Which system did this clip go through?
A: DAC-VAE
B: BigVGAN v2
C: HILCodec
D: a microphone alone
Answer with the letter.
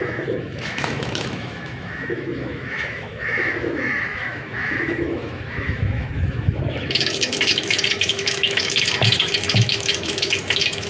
A